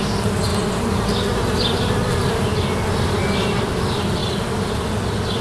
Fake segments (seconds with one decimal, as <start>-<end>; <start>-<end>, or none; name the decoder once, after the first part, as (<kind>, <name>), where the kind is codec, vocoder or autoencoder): none